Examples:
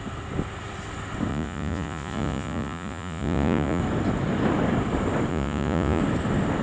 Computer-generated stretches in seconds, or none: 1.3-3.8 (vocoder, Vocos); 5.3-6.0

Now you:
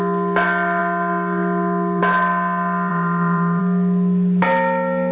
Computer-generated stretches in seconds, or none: 2.9-3.6 (vocoder, BigVGAN v2)

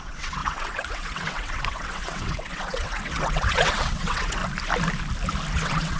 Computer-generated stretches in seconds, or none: 0.0-4.4 (vocoder, WaveNeXt); 5.5-6.0

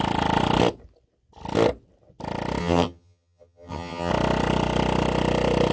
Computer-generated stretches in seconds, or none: 2.6-4.1 (vocoder, HiFi-GAN)

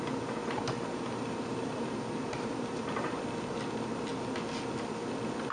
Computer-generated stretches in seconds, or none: 0.4-3.2 (vocoder, BigVGAN v2)

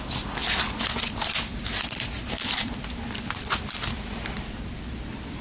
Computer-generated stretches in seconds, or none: none